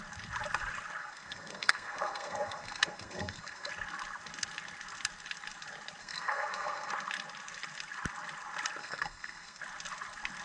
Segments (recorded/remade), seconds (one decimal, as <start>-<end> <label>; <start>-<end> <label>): 0.0-1.0 recorded; 1.0-3.7 remade; 3.7-6.0 recorded; 6.0-6.9 remade; 6.9-8.8 recorded; 8.8-9.6 remade; 9.6-10.4 recorded